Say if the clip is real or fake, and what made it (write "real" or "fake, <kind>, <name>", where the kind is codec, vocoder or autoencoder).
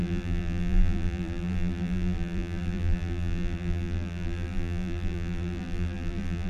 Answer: fake, vocoder, BigVGAN v2